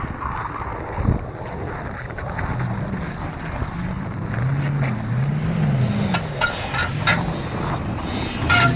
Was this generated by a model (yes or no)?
no